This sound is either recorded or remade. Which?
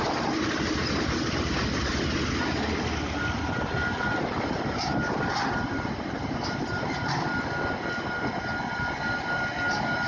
recorded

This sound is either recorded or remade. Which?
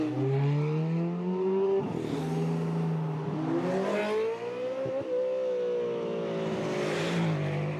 recorded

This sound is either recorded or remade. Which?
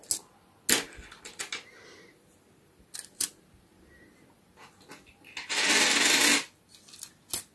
recorded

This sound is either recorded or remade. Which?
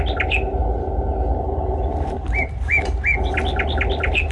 recorded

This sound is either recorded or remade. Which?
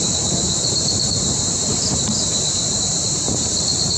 remade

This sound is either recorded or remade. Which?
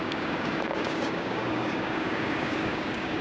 remade